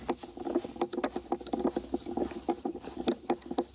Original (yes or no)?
yes